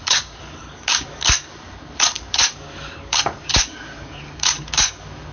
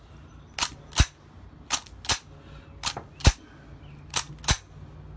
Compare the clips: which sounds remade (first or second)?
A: first